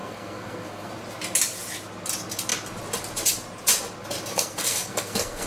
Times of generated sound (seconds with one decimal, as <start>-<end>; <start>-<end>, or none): 0.0-0.9; 4.3-5.5